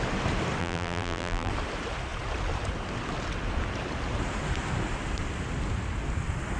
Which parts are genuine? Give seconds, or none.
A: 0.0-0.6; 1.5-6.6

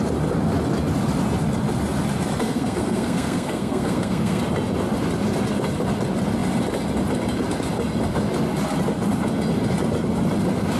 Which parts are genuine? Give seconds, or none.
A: 0.0-2.4; 4.4-10.8